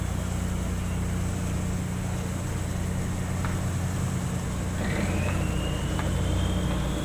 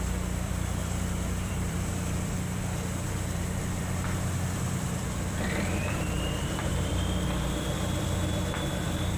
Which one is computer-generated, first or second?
second